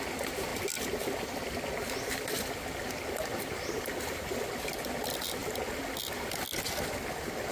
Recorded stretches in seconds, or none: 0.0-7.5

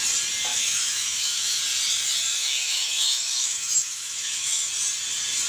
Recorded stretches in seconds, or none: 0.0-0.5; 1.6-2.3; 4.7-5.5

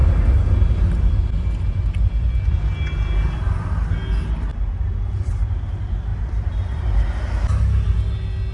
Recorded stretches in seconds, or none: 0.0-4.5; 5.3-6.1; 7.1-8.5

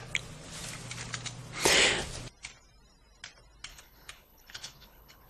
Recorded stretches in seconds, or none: 0.0-3.7